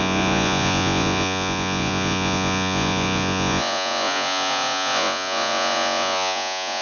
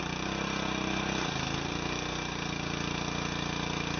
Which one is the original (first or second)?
second